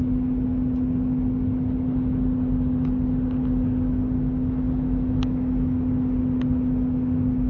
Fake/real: real